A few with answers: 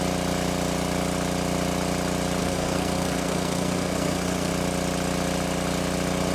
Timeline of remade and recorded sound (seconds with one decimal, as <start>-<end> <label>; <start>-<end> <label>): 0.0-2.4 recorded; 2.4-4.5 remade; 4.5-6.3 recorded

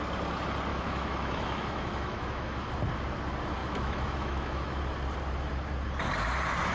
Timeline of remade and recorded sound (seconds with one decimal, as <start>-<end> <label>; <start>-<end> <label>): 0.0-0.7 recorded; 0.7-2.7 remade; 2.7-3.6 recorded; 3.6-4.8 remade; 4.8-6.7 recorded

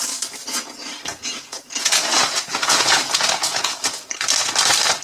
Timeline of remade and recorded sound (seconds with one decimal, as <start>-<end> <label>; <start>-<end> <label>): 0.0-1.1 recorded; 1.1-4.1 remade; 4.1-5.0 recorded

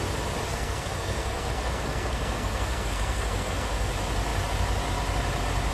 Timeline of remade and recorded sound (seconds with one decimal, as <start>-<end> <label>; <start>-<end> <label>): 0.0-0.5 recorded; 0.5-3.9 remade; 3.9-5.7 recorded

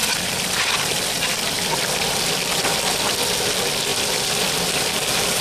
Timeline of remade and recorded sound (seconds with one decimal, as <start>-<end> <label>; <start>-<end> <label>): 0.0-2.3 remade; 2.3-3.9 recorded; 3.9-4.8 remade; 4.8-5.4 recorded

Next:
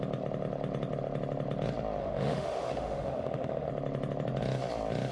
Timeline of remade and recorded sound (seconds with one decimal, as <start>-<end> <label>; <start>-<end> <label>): 0.0-2.0 recorded; 2.0-3.7 remade; 3.7-5.1 recorded